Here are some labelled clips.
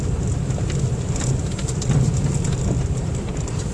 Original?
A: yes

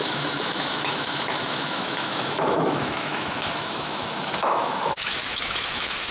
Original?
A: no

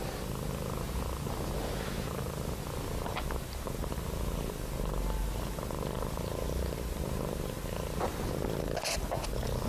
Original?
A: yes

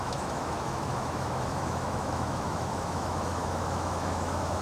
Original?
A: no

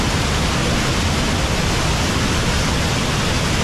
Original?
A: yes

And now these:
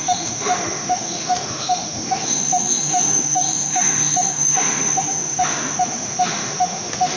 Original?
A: no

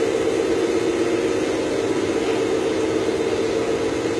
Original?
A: yes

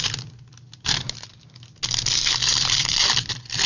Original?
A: yes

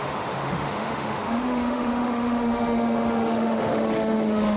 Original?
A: no